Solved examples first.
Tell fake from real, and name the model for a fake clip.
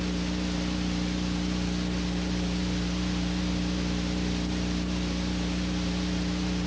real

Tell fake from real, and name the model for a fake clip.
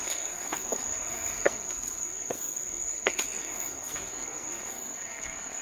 fake, codec, SNAC